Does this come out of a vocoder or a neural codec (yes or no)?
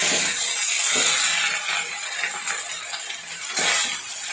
no